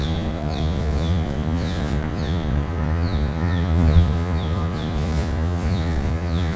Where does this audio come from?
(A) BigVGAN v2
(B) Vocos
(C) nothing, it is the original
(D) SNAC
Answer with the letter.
B